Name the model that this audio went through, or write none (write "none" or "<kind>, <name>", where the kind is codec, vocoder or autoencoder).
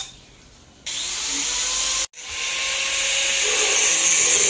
none